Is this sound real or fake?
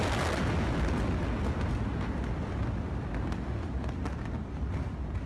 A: real